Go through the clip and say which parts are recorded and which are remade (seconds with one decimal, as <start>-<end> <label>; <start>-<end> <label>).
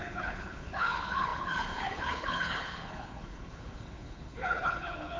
0.0-5.2 remade